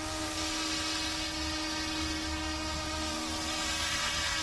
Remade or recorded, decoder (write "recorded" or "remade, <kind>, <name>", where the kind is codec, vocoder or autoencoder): recorded